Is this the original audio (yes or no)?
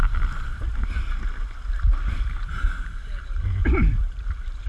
yes